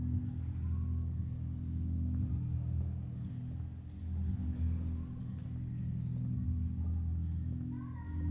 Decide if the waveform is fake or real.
real